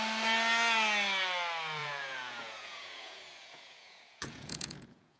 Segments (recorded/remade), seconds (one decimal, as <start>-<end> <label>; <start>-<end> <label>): 0.0-1.8 recorded; 1.8-5.2 remade